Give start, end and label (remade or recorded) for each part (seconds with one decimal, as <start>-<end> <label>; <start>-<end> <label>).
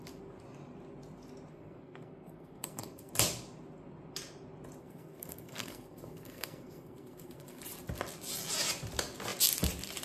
0.0-1.5 recorded; 1.5-3.1 remade; 3.1-4.8 recorded; 4.8-7.6 remade; 7.6-10.0 recorded